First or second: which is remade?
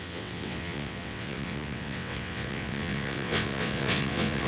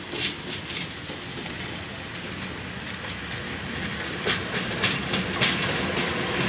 first